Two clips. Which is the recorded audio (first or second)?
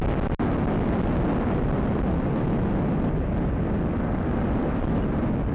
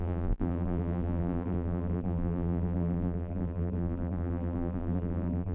first